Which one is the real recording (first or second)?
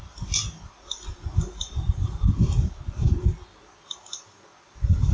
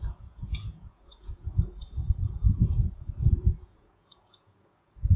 first